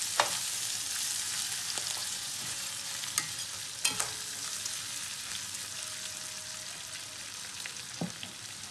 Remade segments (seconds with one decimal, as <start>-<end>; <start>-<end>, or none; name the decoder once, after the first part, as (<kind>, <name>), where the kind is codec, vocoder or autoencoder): 2.0-2.7 (vocoder, Vocos)